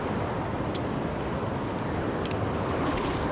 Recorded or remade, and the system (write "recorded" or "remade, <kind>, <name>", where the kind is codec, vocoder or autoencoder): recorded